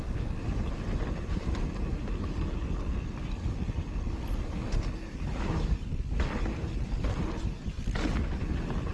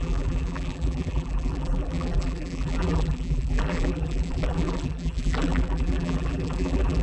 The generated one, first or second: second